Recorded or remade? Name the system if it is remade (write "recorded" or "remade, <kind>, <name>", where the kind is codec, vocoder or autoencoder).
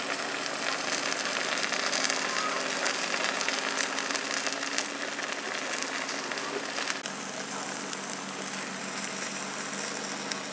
recorded